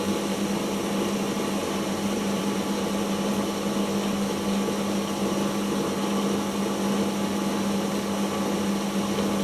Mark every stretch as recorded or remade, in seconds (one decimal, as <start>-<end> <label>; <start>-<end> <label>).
0.0-1.6 recorded; 1.6-2.4 remade; 2.4-9.4 recorded